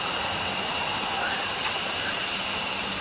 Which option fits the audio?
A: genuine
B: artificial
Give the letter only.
A